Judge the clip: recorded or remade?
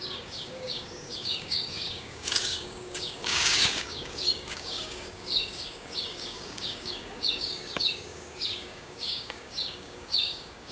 remade